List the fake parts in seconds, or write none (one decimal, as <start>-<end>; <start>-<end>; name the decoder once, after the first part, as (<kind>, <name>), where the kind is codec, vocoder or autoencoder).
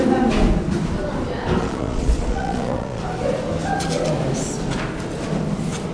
1.6-3.0 (vocoder, Vocos)